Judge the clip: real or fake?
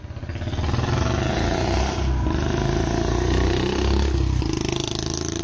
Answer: real